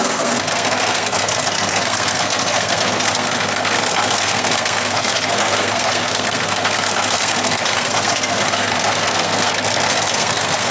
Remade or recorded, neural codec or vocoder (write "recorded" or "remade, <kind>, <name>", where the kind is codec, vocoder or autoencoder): remade, codec, SNAC